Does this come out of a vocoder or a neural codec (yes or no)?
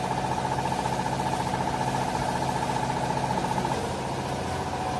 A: no